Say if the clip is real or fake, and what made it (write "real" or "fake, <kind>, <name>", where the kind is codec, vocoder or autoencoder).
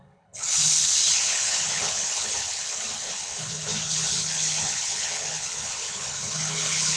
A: fake, codec, HILCodec